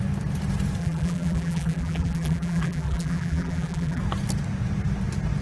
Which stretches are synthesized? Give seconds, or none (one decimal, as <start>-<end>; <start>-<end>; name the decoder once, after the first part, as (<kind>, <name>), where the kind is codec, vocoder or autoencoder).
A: 0.8-4.0 (vocoder, BigVGAN v2)